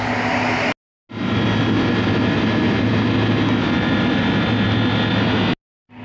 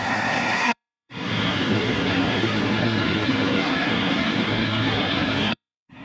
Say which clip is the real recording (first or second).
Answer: first